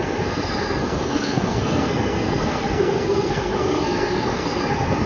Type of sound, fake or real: fake